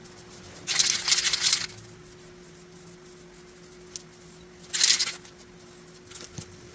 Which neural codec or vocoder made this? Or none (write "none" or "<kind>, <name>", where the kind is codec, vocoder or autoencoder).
none